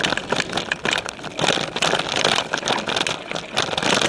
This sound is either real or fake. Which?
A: real